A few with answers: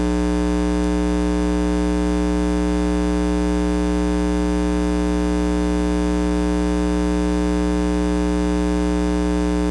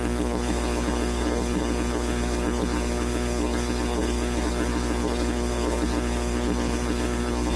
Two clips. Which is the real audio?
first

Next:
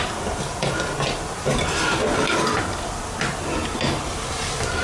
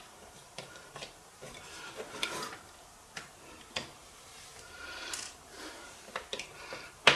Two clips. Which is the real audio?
first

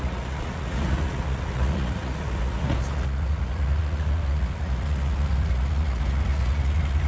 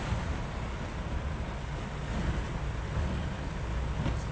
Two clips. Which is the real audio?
second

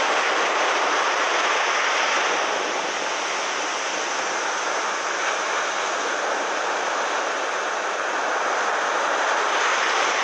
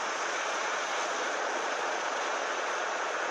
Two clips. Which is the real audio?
first